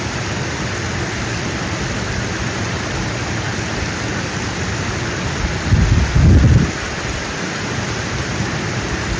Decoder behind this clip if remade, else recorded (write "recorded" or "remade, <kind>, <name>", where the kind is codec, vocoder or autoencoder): recorded